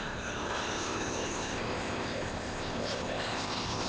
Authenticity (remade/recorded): remade